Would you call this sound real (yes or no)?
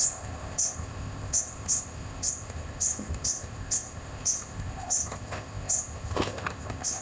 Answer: no